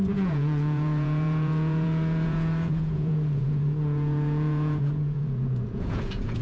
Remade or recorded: remade